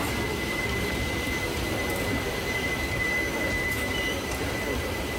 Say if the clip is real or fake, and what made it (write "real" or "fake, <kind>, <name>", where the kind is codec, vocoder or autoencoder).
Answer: fake, vocoder, BigVGAN v2